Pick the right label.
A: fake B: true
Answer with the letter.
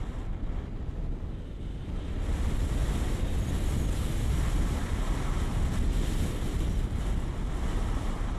B